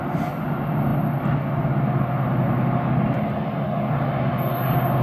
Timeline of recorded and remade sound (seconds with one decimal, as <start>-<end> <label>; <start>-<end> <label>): 0.0-5.0 recorded